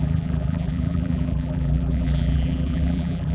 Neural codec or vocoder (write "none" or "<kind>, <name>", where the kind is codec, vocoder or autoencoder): vocoder, BigVGAN v2